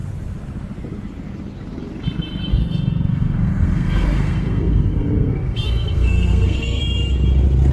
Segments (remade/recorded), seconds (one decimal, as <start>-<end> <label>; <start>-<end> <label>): 0.0-2.5 recorded; 2.5-6.8 remade; 6.8-7.7 recorded